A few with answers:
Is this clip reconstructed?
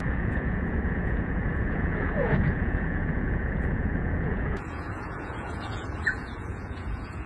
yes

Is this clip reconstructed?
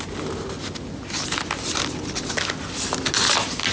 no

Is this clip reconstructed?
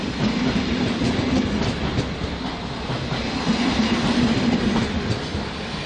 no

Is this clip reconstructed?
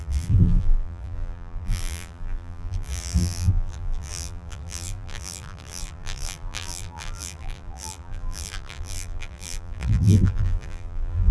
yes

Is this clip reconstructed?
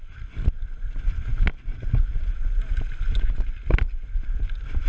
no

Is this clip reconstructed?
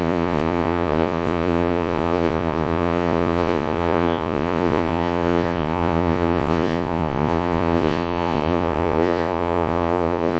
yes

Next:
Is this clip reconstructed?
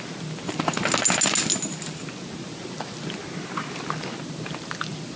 no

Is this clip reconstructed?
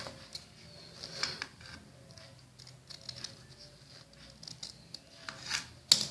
no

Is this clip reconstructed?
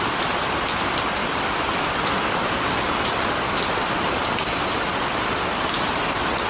no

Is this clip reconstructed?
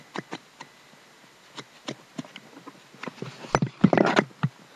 no